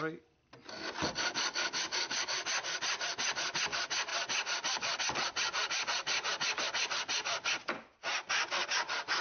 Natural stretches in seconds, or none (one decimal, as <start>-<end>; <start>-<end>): 0.0-9.2